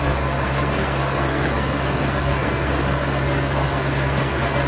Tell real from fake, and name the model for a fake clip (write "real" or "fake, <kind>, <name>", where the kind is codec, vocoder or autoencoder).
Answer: fake, codec, SNAC